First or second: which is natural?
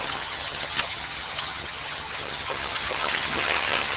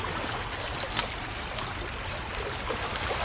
second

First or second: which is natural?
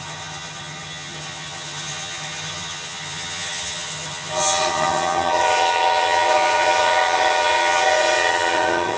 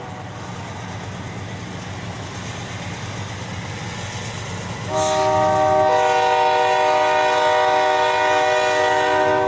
second